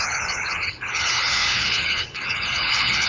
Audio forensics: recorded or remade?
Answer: remade